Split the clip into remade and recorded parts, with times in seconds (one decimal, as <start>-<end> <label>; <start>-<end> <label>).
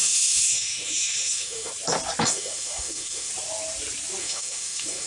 0.0-1.7 remade; 1.7-2.3 recorded; 2.3-3.3 remade; 3.3-4.2 recorded; 4.2-5.1 remade